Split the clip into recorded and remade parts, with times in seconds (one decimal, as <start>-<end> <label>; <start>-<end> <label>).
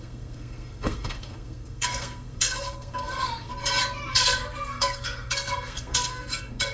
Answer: 0.0-3.5 remade; 3.5-4.1 recorded; 4.1-6.7 remade